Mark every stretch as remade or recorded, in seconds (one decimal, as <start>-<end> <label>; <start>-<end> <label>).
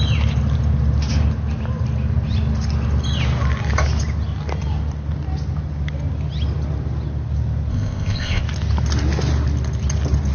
0.0-7.7 recorded; 7.7-8.4 remade; 8.4-10.3 recorded